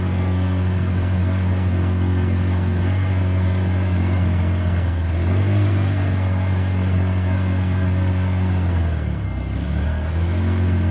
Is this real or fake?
fake